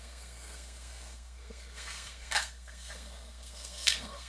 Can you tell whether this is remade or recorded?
remade